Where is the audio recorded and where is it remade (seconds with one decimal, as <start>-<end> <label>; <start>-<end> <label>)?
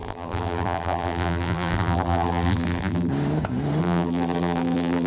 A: 0.0-3.1 remade; 3.1-3.8 recorded; 3.8-5.1 remade